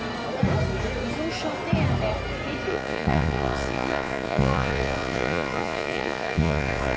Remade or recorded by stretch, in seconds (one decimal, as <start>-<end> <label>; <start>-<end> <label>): 0.0-2.7 recorded; 2.7-7.0 remade